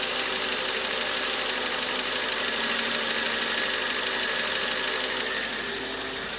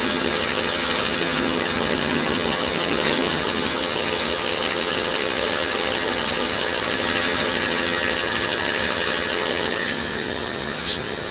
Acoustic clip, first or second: first